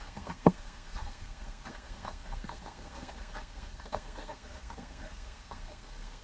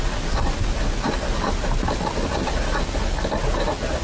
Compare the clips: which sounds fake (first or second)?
first